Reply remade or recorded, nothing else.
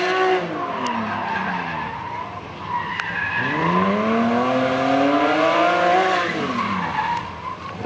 recorded